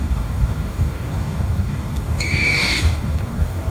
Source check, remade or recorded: remade